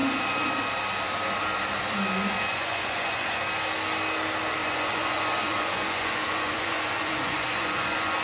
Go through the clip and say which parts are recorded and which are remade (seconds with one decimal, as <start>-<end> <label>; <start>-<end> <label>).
0.0-2.5 recorded; 2.5-3.4 remade; 3.4-4.6 recorded; 4.6-8.2 remade